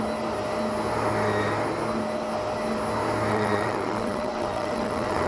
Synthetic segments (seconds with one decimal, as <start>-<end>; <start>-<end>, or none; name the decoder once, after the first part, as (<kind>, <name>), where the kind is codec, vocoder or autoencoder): 3.3-5.3 (vocoder, WaveNeXt)